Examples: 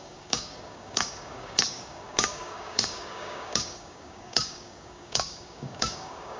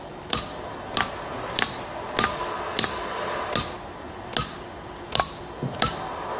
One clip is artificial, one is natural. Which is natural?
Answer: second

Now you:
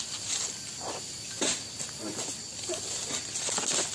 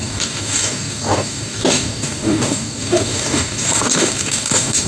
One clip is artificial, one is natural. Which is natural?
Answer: first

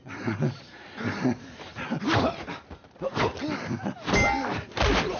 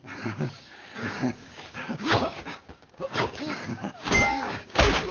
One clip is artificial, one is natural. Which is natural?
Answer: first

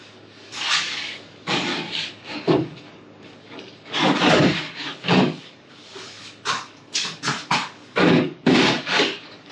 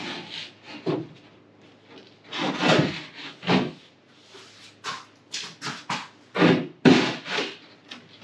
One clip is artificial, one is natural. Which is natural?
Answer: second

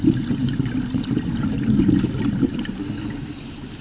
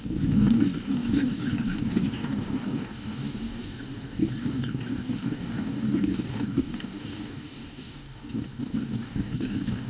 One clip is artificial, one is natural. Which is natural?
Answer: first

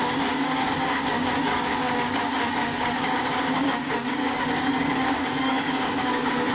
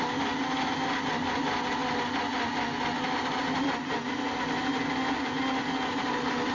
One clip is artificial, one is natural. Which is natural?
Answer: second